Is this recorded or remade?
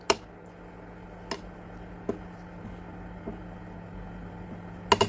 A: recorded